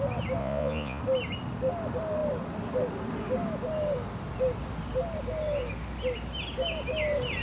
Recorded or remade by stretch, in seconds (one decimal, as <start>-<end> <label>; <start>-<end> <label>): 0.0-0.4 recorded; 0.4-1.0 remade; 1.0-7.4 recorded